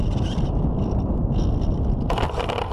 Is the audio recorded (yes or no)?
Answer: yes